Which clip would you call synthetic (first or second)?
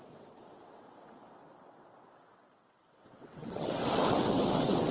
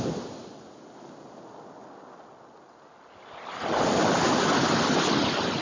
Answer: first